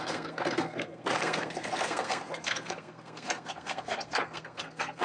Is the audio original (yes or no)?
no